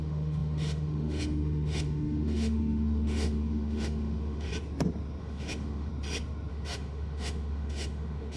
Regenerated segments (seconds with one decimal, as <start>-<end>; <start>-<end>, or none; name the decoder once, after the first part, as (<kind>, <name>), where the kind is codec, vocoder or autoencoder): 0.0-4.5 (autoencoder, DAC-VAE); 5.2-5.9; 6.5-8.4